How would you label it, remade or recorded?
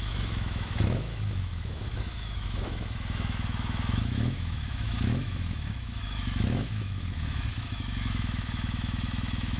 remade